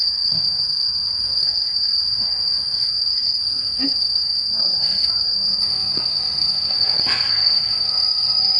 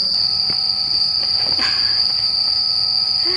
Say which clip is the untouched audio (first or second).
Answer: second